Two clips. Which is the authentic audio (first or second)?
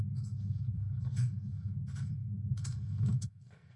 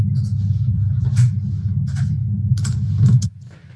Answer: second